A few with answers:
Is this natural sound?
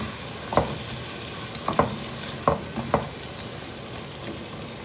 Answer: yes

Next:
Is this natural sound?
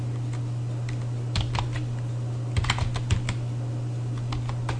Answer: yes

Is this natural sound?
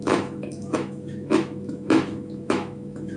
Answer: no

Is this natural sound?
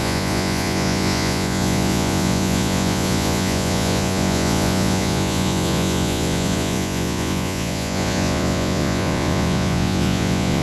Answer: no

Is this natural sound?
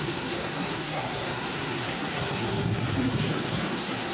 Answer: no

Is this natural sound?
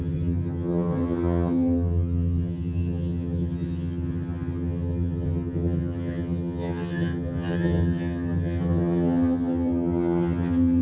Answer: no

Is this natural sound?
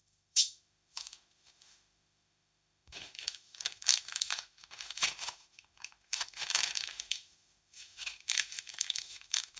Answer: no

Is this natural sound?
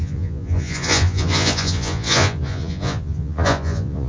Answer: no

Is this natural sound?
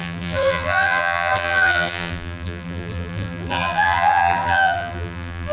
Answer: no